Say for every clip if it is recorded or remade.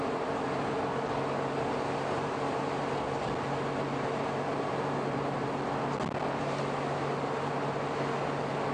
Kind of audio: recorded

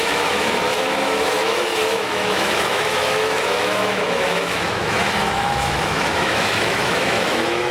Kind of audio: remade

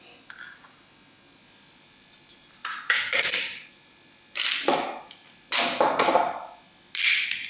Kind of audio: recorded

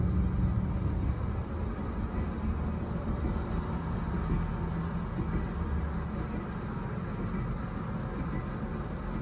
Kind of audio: recorded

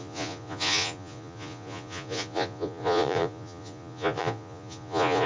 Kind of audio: remade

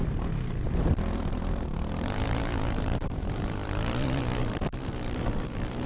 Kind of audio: remade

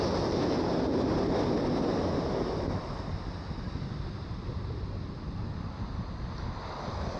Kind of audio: recorded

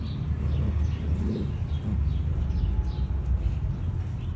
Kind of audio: recorded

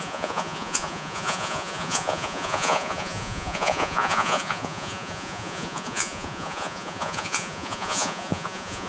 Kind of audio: remade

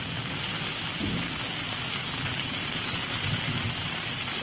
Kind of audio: recorded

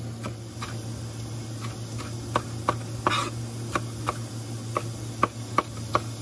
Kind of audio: recorded